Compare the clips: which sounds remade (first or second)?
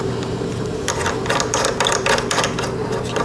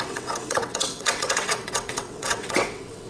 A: second